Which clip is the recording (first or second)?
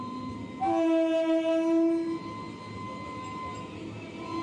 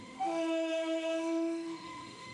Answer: first